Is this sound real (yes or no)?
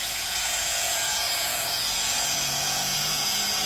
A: no